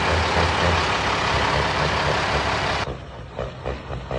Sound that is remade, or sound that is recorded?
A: recorded